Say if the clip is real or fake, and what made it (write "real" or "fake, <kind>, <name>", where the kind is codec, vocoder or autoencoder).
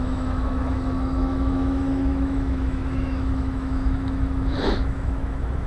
fake, autoencoder, DAC-VAE